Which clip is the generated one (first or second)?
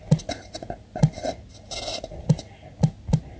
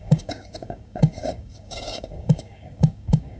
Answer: second